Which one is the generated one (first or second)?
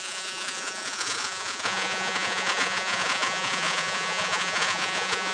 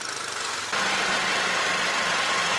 first